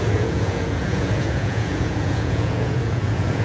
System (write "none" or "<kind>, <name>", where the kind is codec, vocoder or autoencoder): vocoder, Vocos